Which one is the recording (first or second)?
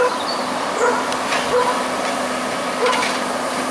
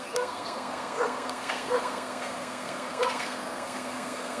first